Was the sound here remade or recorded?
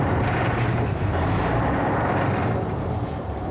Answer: remade